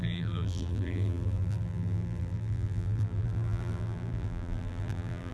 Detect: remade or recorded remade